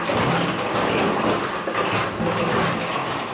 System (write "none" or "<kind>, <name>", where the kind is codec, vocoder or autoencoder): none